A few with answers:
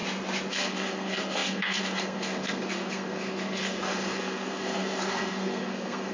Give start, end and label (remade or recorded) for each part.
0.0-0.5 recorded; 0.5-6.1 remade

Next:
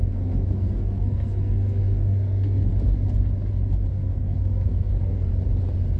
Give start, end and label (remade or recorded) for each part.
0.0-2.7 remade; 2.7-3.9 recorded; 3.9-5.3 remade; 5.3-6.0 recorded

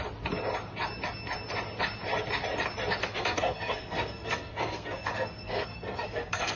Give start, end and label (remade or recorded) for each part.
0.0-3.0 recorded; 3.0-6.6 remade

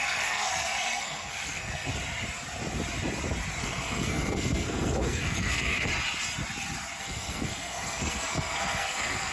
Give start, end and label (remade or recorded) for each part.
0.0-1.9 remade; 1.9-3.6 recorded; 3.6-5.9 remade; 5.9-7.0 recorded; 7.0-9.3 remade

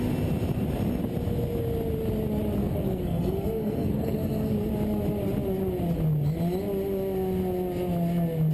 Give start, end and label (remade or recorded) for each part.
0.0-2.6 recorded; 2.6-4.7 remade; 4.7-8.5 recorded

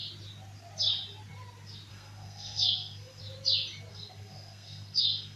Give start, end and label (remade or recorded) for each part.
0.0-1.9 recorded; 1.9-3.2 remade; 3.2-3.9 recorded; 3.9-5.4 remade